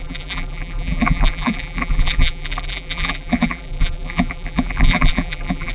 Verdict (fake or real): fake